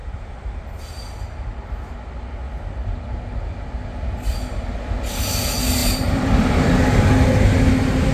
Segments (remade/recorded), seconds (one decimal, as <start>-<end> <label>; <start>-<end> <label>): 0.0-1.1 remade; 1.1-5.8 recorded; 5.8-7.0 remade; 7.0-8.1 recorded

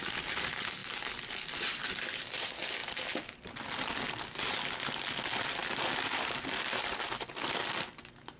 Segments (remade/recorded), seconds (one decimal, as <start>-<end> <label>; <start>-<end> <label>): 0.0-8.4 recorded

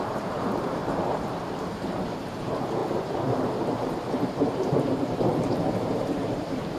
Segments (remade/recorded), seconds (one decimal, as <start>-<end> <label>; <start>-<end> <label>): 0.0-0.8 remade; 0.8-2.2 recorded; 2.2-6.8 remade

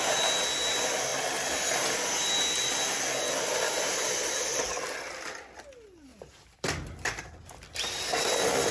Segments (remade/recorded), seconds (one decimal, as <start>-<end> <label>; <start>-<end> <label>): 0.0-6.1 recorded; 6.1-6.7 remade; 6.7-8.7 recorded

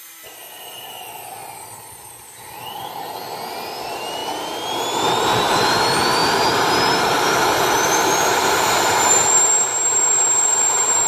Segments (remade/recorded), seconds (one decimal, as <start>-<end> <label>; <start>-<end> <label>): 0.0-0.4 remade; 0.4-3.8 recorded; 3.8-4.2 remade; 4.2-4.8 recorded; 4.8-11.1 remade

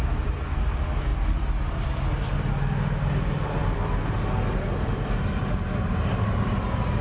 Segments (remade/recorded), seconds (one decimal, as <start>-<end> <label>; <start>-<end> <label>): 0.0-1.1 recorded; 1.1-2.5 remade; 2.5-7.0 recorded

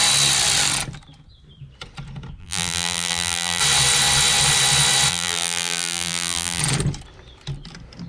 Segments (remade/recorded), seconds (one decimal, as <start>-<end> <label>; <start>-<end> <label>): 0.0-2.4 recorded; 2.4-3.6 remade; 3.6-5.1 recorded; 5.1-6.6 remade; 6.6-8.1 recorded

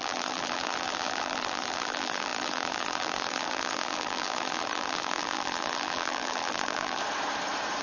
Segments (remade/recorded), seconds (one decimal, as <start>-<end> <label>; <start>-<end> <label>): 0.0-7.0 remade; 7.0-7.8 recorded